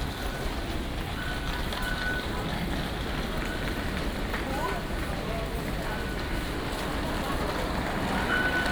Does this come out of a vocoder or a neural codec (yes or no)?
no